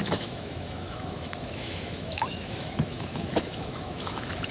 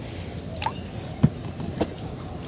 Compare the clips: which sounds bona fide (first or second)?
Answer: second